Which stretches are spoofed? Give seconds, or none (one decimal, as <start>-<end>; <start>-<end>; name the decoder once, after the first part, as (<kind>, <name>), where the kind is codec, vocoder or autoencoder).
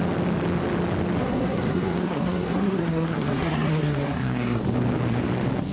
1.2-4.6 (codec, SNAC)